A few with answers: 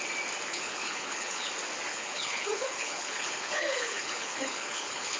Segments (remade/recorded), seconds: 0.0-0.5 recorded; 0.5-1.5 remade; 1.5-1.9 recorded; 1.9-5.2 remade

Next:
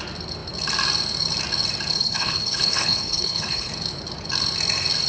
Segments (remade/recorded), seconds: 0.0-1.9 recorded; 1.9-3.7 remade; 3.7-5.1 recorded

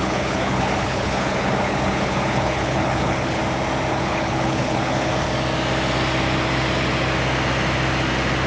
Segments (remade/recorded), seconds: 0.0-3.4 remade; 3.4-3.9 recorded; 3.9-5.1 remade; 5.1-8.5 recorded

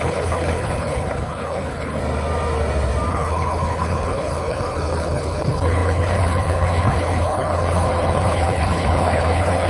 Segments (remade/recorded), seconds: 0.0-2.0 remade; 2.0-3.1 recorded; 3.1-9.7 remade

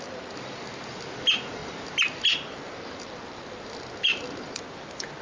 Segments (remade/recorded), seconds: 0.0-5.2 recorded

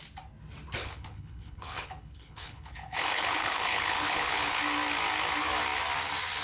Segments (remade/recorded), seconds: 0.0-0.8 recorded; 0.8-4.6 remade; 4.6-6.4 recorded

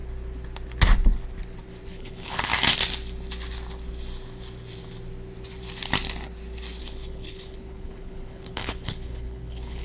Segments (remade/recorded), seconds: 0.0-1.9 recorded; 1.9-2.5 remade; 2.5-6.8 recorded; 6.8-9.8 remade

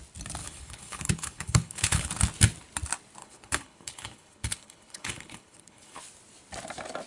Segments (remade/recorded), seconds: 0.0-0.4 recorded; 0.4-2.1 remade; 2.1-3.2 recorded; 3.2-6.0 remade; 6.0-7.1 recorded